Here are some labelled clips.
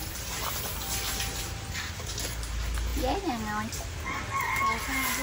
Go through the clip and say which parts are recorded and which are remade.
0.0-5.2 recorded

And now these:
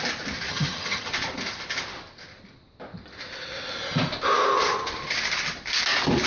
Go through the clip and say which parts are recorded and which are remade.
0.0-0.5 recorded; 0.5-1.1 remade; 1.1-6.3 recorded

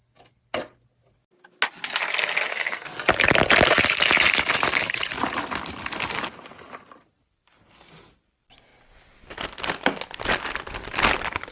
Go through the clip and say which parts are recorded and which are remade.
0.0-2.5 recorded; 2.5-3.0 remade; 3.0-11.5 recorded

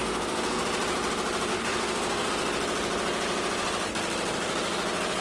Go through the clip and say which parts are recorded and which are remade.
0.0-0.6 remade; 0.6-1.5 recorded; 1.5-2.3 remade; 2.3-5.2 recorded

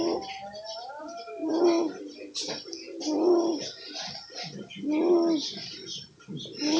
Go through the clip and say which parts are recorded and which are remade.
0.0-6.8 recorded

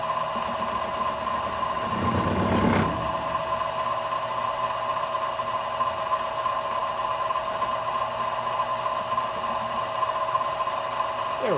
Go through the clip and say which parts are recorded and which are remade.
0.0-11.6 recorded